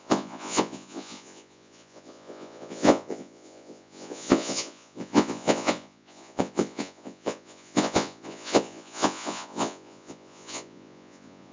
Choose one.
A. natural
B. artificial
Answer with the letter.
B